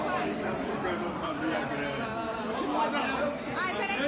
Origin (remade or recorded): recorded